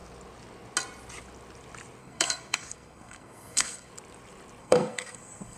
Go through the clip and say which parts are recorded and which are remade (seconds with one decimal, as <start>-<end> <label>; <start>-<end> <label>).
0.0-2.0 recorded; 2.0-3.9 remade; 3.9-4.6 recorded; 4.6-5.6 remade